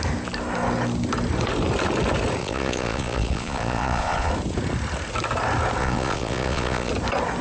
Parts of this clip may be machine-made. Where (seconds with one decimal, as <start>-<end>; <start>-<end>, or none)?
2.4-4.3; 5.8-6.9